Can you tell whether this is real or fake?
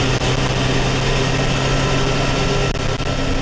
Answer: real